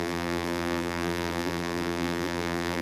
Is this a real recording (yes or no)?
no